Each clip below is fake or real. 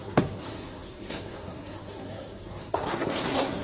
fake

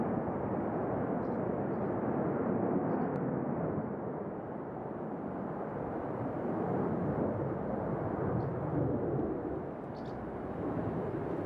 real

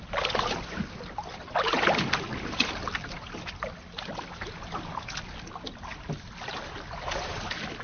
real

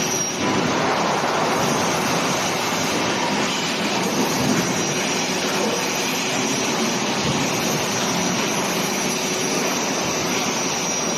real